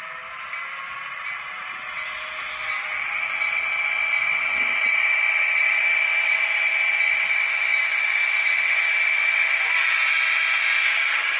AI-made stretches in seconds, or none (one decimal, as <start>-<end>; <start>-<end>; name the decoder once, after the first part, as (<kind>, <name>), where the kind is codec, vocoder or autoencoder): none